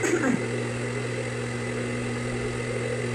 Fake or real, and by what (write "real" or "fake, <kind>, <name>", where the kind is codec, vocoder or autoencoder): real